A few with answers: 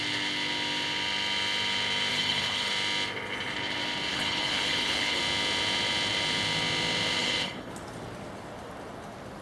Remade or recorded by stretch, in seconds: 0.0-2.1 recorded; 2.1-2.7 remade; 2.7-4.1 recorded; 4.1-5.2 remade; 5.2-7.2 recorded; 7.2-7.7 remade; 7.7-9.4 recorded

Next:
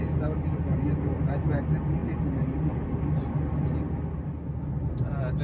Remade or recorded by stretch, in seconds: 0.0-5.4 recorded

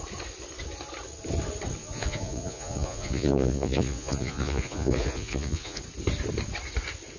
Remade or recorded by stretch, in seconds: 0.0-1.8 recorded; 1.8-5.8 remade; 5.8-7.2 recorded

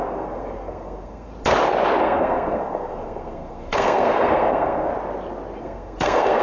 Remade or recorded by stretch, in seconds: 0.0-1.3 remade; 1.3-2.0 recorded; 2.0-4.9 remade; 4.9-5.6 recorded; 5.6-6.4 remade

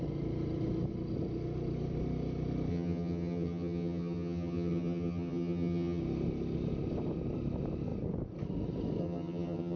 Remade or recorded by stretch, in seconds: 0.0-2.7 recorded; 2.7-6.0 remade; 6.0-9.0 recorded; 9.0-9.8 remade

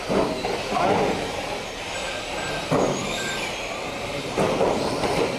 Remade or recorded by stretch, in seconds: 0.0-2.0 recorded; 2.0-5.4 remade

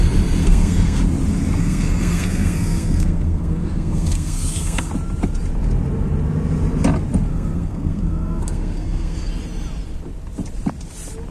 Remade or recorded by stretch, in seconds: 0.0-0.4 recorded; 0.4-1.0 remade; 1.0-1.6 recorded; 1.6-4.9 remade; 4.9-7.3 recorded; 7.3-9.3 remade; 9.3-11.3 recorded

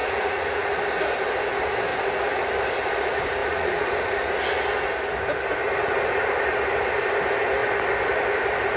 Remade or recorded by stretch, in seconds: 0.0-0.8 remade; 0.8-1.9 recorded; 1.9-2.5 remade; 2.5-3.4 recorded; 3.4-4.3 remade; 4.3-8.8 recorded